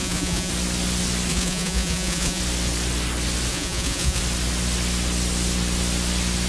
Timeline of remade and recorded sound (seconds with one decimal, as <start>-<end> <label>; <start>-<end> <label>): 0.0-0.5 remade; 0.5-1.3 recorded; 1.3-2.4 remade; 2.4-3.5 recorded; 3.5-4.2 remade; 4.2-6.5 recorded